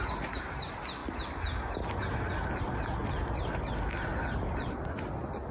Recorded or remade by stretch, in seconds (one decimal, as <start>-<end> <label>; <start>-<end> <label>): 0.0-5.5 recorded